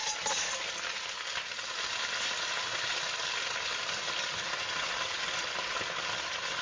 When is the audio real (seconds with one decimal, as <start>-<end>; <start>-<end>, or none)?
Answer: 0.0-6.6